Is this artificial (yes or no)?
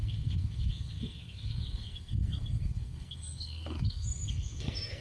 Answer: yes